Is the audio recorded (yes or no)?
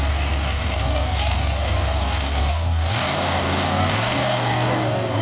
no